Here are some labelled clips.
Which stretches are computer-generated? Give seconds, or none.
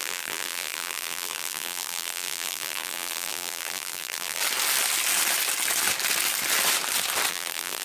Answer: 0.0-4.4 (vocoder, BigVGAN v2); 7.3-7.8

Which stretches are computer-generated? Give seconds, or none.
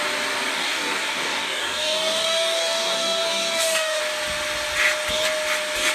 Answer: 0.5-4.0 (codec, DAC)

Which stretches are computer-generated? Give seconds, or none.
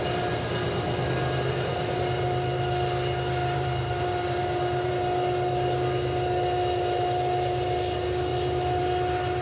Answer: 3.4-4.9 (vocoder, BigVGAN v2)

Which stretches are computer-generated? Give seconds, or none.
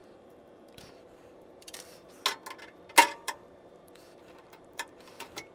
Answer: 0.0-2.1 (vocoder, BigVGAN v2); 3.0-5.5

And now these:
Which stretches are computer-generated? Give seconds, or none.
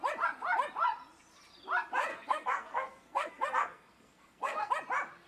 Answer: 2.1-4.7 (codec, SNAC)